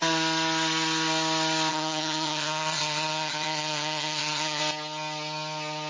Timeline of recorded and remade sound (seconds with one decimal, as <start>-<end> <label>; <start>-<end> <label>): 0.0-1.7 recorded; 1.7-4.6 remade; 4.6-5.9 recorded